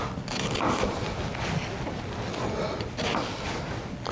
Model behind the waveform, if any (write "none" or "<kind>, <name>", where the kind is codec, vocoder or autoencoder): none